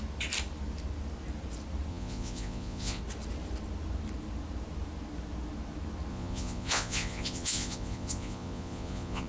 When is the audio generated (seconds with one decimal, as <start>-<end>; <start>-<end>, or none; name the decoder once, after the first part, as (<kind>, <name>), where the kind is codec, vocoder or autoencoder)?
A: 1.9-3.0 (vocoder, Vocos); 6.1-9.3

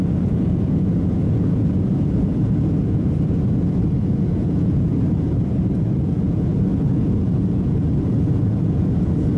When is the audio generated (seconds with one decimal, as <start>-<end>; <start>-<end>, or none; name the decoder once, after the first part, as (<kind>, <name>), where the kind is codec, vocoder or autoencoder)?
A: 0.0-4.9 (vocoder, Vocos); 6.0-9.4